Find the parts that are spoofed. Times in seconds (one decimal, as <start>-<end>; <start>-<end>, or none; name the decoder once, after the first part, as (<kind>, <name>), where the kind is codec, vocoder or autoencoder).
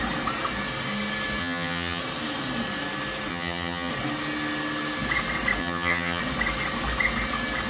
1.4-2.0 (vocoder, HiFi-GAN); 3.3-3.9; 5.6-6.2